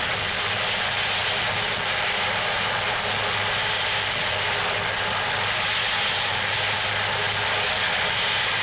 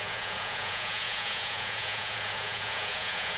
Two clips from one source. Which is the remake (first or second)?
second